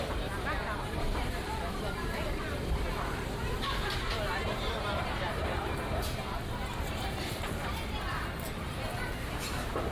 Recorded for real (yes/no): no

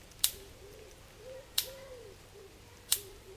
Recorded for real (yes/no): no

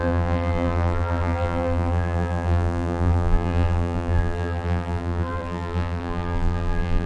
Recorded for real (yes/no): no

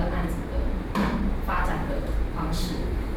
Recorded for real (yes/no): no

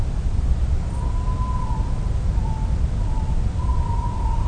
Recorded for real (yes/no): yes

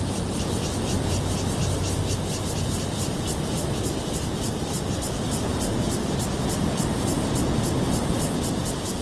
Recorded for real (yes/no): yes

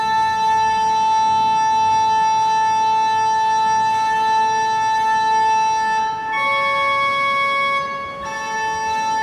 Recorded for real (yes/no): yes